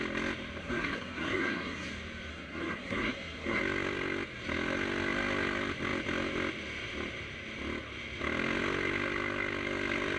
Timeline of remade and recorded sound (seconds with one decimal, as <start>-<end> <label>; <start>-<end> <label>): 0.0-0.6 recorded; 0.6-1.9 remade; 1.9-2.3 recorded; 2.3-3.6 remade; 3.6-10.2 recorded